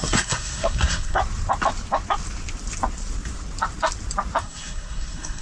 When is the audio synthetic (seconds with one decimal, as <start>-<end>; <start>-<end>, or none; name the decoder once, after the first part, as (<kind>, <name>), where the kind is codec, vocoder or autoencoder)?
0.0-1.2 (codec, SNAC); 4.4-5.4

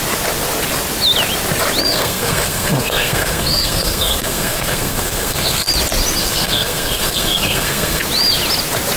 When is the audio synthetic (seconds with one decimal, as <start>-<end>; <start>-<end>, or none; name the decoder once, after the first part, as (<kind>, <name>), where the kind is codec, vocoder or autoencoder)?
1.9-5.7 (codec, SNAC); 6.2-8.0

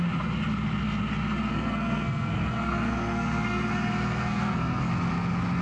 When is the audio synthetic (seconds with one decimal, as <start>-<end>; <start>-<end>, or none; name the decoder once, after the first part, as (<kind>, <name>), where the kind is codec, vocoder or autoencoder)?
1.5-4.9 (codec, SNAC)